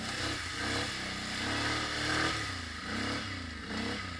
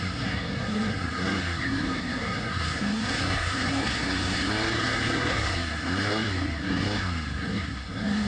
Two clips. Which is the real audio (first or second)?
first